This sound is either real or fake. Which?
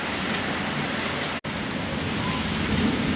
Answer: real